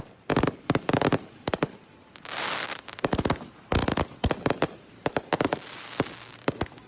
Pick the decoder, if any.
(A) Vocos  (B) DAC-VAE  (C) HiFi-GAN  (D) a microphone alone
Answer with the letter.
D